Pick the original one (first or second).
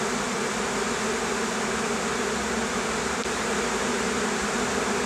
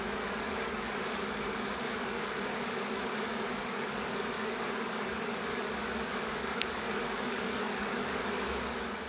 first